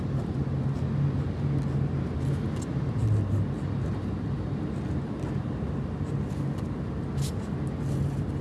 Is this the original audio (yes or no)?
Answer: yes